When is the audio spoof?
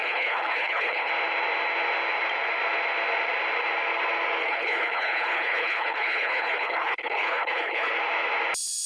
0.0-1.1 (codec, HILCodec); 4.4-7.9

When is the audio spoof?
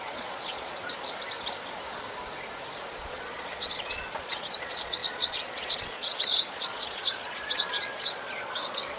0.0-0.8 (vocoder, Vocos); 2.9-9.0